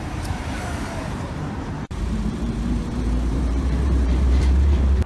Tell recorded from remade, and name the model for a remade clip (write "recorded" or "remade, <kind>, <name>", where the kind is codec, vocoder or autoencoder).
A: remade, vocoder, BigVGAN v2